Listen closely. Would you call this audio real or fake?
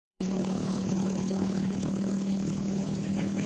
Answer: fake